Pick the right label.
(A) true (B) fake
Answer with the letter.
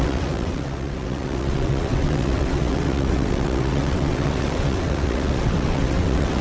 B